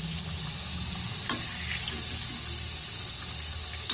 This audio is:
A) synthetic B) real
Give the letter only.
B